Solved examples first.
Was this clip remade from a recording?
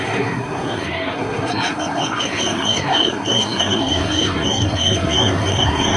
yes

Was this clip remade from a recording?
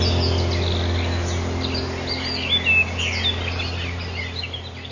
no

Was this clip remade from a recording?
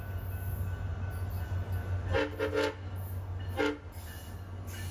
no